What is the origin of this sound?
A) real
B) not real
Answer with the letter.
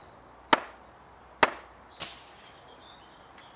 A